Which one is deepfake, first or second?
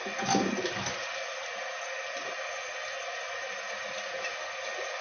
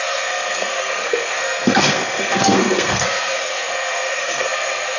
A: second